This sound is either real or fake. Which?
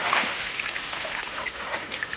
fake